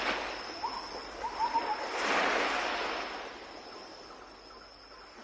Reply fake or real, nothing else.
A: real